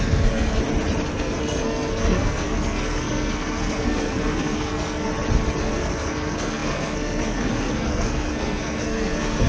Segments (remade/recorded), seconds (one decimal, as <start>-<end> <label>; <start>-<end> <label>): 0.0-0.6 remade; 0.6-1.1 recorded; 1.1-5.1 remade; 5.1-5.6 recorded; 5.6-9.5 remade